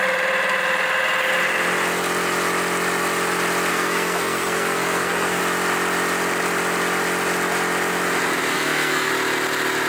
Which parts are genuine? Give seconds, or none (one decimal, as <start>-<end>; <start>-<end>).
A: 0.0-3.7; 5.4-8.5; 9.1-9.9